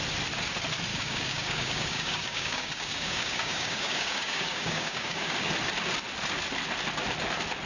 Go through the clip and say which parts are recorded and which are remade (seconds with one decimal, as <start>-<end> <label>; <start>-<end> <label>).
0.0-0.9 recorded; 0.9-5.5 remade; 5.5-7.7 recorded